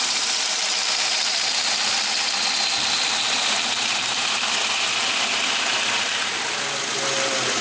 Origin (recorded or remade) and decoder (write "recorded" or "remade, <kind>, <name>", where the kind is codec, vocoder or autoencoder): recorded